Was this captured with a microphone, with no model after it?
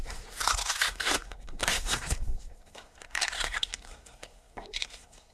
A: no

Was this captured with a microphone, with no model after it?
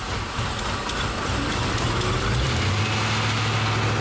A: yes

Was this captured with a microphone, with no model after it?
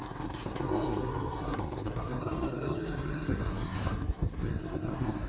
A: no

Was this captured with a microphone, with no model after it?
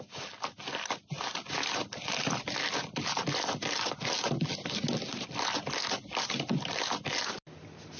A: yes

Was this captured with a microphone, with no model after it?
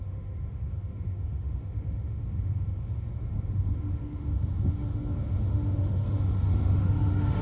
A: no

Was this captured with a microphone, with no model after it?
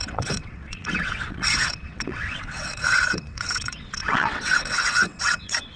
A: no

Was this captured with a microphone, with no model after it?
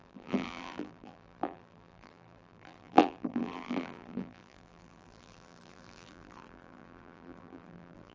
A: no